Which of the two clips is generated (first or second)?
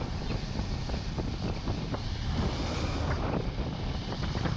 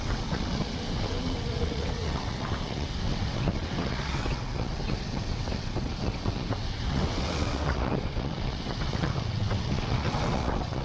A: second